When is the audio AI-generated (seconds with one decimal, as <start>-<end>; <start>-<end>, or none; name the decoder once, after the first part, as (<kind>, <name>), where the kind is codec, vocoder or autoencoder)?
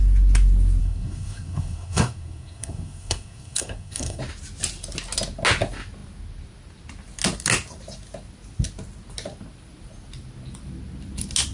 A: 0.8-4.2 (codec, SNAC)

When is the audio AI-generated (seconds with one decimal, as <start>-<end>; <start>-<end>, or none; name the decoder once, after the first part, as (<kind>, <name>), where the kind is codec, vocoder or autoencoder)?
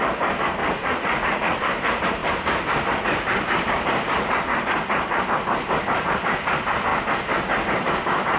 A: 0.6-1.6 (vocoder, Vocos)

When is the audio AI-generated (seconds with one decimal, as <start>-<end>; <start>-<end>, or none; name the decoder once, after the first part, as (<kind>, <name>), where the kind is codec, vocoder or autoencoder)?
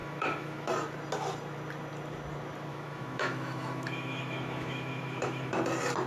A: 0.0-0.7 (autoencoder, DAC-VAE); 2.7-5.6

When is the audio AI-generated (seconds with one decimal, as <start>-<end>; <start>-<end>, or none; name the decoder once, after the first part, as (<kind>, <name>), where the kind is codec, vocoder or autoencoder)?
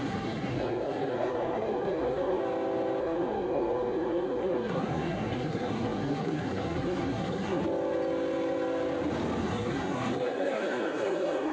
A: 0.0-2.4 (codec, SNAC); 3.0-7.6; 9.4-11.5